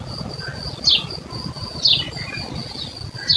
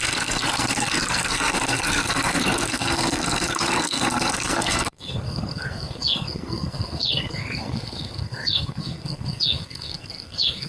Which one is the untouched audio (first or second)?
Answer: first